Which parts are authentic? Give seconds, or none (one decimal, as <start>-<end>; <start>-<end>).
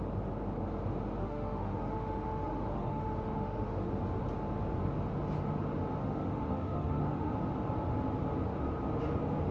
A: 0.0-1.2; 3.9-6.0; 7.3-9.5